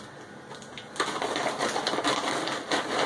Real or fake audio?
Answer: real